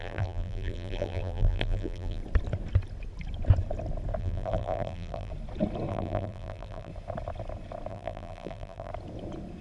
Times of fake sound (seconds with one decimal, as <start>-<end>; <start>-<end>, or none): 0.0-2.2; 4.2-5.3; 5.9-6.9; 7.9-8.9